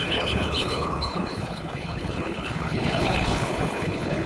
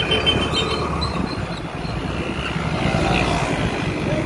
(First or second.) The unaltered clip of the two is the second